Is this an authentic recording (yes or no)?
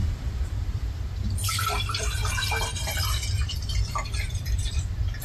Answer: no